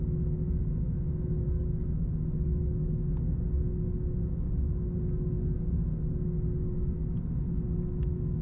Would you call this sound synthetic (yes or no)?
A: no